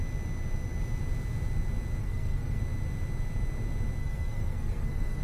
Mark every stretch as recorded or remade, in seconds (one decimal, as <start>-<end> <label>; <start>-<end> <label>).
0.0-2.0 recorded; 2.0-2.6 remade; 2.6-4.0 recorded; 4.0-5.2 remade